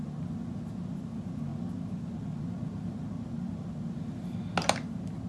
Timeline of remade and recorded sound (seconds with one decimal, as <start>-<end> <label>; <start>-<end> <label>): 0.0-5.3 recorded